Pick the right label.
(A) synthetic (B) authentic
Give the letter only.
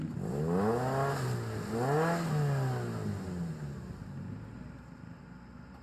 B